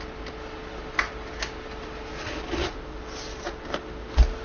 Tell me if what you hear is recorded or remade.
recorded